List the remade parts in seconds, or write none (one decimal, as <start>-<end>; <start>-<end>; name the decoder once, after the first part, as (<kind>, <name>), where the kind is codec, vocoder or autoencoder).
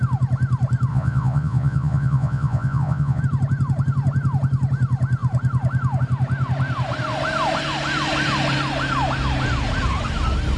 0.9-3.2 (vocoder, Vocos)